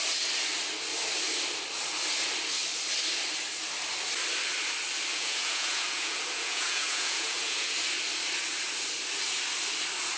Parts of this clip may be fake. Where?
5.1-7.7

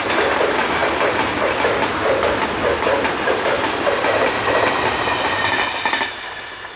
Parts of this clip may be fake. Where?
none

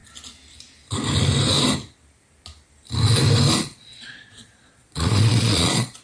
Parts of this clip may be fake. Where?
3.6-6.0

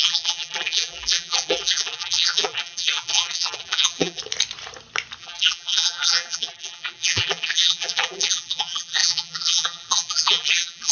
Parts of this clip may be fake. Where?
0.0-4.2; 5.2-10.9

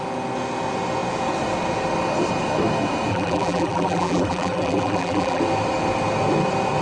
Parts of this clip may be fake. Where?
3.1-5.4